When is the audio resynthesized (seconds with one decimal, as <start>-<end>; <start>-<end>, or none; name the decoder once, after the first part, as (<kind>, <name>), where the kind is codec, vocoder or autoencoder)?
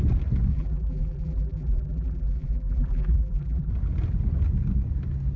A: 0.5-3.7 (vocoder, BigVGAN v2)